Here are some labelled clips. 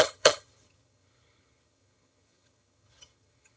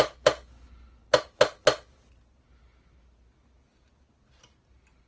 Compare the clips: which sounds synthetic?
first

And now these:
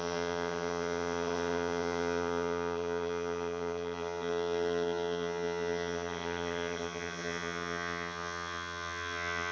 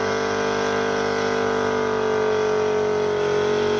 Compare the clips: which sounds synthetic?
first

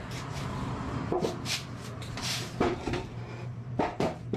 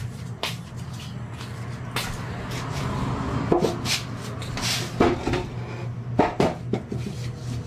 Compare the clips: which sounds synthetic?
first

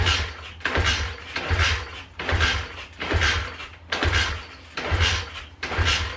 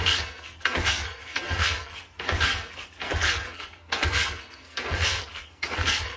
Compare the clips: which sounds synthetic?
second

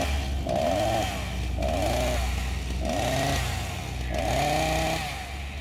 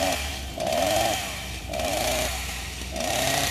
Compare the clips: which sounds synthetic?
second